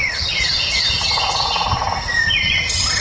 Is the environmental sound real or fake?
real